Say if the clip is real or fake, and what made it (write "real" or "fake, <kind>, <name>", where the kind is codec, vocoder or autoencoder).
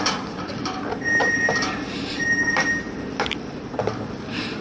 fake, vocoder, BigVGAN v2